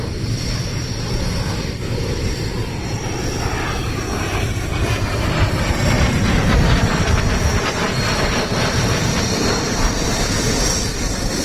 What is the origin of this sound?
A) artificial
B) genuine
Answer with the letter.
A